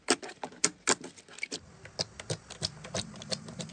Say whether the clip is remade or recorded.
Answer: recorded